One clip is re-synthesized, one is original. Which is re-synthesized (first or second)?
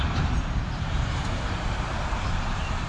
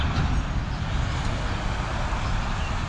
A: first